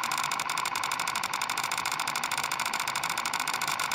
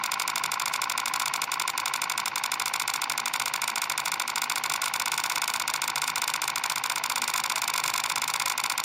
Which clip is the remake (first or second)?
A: first